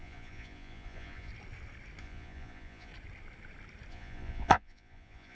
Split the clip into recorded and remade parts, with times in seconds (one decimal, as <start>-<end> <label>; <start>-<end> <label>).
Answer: 0.0-1.3 remade; 1.3-2.0 recorded; 2.0-2.9 remade; 2.9-3.9 recorded; 3.9-5.3 remade